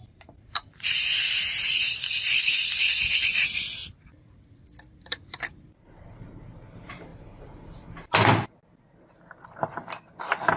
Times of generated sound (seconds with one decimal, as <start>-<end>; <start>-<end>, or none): 0.0-3.8; 5.1-7.1; 10.2-10.6